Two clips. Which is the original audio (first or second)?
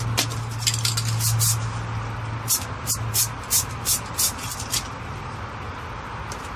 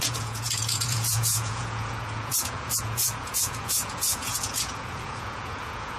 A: first